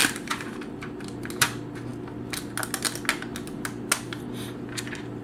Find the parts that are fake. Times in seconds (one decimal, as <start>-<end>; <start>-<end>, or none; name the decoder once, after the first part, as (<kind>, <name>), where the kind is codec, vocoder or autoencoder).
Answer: 0.0-1.0 (vocoder, BigVGAN v2)

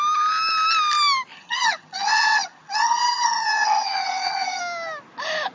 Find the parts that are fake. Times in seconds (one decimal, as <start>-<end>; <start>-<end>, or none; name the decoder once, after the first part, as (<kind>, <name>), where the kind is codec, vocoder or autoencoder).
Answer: 1.3-4.6 (vocoder, HiFi-GAN)

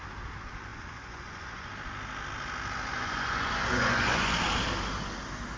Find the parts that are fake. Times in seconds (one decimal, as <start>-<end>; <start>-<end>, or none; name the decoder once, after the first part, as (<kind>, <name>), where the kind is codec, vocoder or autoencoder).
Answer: 0.7-1.7 (vocoder, Vocos); 2.9-4.4

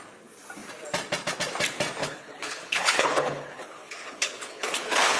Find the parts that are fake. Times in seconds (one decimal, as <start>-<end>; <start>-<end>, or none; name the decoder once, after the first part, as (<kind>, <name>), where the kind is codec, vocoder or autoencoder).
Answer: 2.0-5.2 (codec, HILCodec)